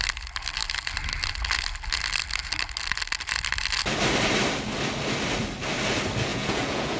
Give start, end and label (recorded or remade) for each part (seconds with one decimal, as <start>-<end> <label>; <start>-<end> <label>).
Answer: 0.0-6.3 recorded; 6.3-7.0 remade